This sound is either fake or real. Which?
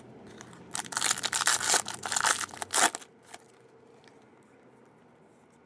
real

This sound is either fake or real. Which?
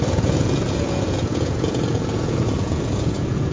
fake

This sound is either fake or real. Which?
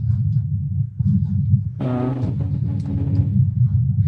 real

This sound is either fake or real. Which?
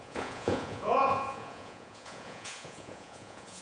fake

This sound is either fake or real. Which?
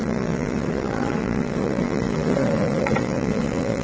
fake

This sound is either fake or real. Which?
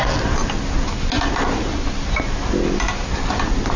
real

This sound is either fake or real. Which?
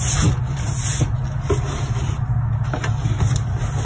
real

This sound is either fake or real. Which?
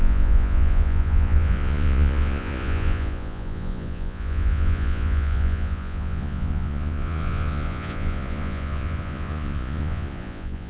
fake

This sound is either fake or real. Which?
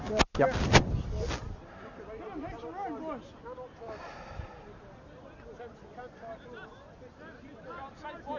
real